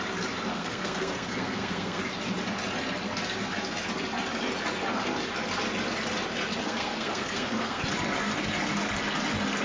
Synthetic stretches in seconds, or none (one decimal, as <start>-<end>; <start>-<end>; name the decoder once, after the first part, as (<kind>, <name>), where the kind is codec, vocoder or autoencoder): 0.5-2.0 (codec, SNAC); 6.6-7.8